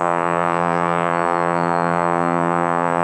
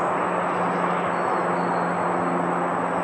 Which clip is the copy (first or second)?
first